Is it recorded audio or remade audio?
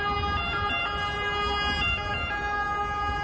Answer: recorded